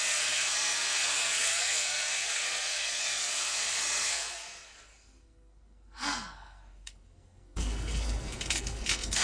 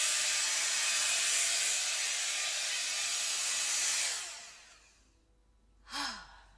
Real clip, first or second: second